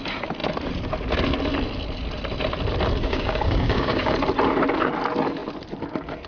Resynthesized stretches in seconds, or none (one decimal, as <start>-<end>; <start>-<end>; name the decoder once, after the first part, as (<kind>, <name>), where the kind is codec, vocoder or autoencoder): 3.0-4.1 (codec, DAC)

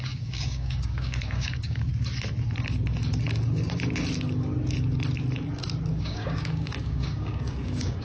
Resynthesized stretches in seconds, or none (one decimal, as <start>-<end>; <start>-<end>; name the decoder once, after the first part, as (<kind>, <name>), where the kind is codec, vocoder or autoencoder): 0.0-1.9 (codec, DAC); 5.9-8.0

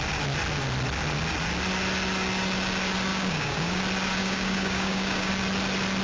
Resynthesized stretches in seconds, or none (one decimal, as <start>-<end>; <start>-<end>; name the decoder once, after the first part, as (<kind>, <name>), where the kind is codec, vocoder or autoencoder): 3.1-3.8 (codec, DAC); 4.2-5.3

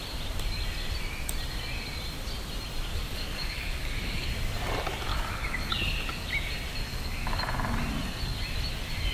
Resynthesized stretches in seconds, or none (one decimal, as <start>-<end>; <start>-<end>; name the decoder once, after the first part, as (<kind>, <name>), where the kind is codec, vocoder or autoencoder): 2.9-4.3 (codec, DAC); 5.1-5.7; 6.9-7.4

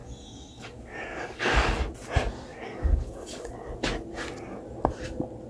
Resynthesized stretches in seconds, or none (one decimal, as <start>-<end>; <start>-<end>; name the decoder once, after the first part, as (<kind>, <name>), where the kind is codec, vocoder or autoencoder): 0.0-1.8 (codec, DAC); 2.5-3.5

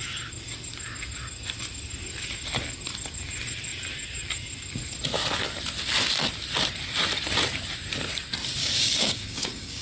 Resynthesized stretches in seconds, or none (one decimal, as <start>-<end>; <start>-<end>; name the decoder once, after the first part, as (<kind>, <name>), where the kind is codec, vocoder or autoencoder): 8.6-9.8 (codec, DAC)

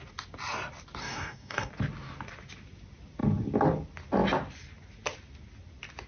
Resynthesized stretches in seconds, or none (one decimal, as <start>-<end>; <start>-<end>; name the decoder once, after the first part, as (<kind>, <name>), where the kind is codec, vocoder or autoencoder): 1.0-1.7 (codec, DAC)

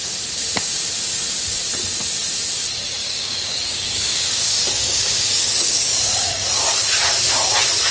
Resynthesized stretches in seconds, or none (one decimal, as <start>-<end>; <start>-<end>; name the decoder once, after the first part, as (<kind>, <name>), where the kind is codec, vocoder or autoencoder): 3.0-6.6 (codec, DAC)